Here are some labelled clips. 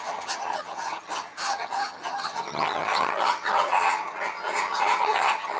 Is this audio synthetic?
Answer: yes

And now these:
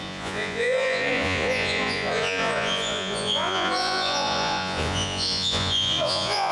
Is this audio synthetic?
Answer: yes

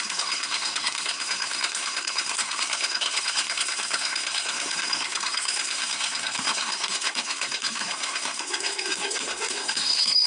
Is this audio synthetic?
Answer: yes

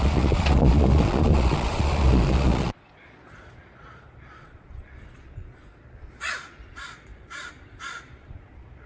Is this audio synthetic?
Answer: yes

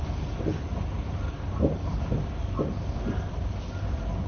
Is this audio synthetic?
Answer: no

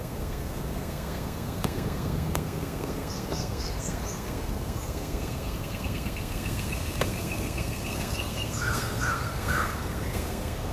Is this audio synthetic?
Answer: yes